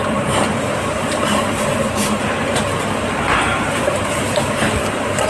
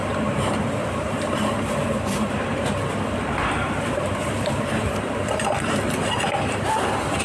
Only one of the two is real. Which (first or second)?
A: first